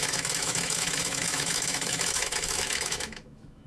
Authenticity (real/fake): fake